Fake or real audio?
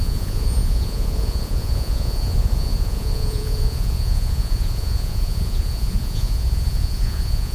fake